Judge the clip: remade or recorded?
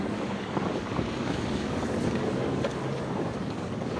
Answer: remade